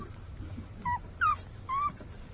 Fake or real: fake